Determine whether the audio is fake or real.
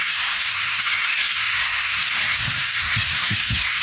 fake